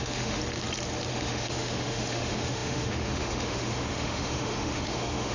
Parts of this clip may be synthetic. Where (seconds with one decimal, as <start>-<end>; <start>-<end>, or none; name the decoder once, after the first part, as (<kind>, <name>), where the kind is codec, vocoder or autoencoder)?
0.0-0.4 (autoencoder, DAC-VAE); 1.1-5.3